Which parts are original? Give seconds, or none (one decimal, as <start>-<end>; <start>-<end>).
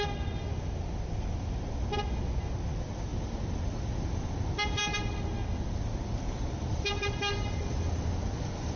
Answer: 0.0-8.8